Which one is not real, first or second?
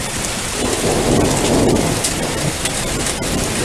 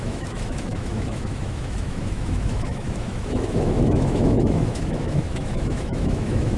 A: second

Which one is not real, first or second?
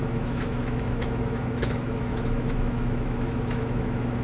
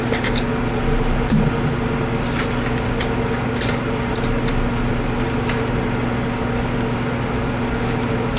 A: first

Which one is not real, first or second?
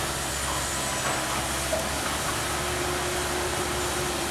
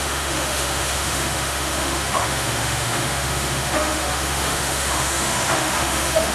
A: second